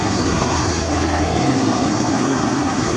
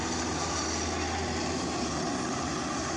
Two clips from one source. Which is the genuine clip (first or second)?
second